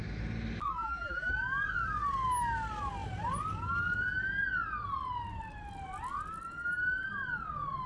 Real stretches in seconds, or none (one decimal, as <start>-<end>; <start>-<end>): 0.0-0.8; 1.3-7.9